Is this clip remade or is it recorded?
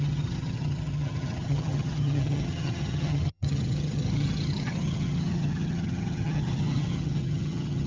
remade